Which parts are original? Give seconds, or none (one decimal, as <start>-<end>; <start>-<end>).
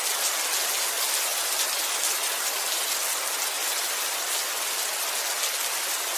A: 0.0-6.2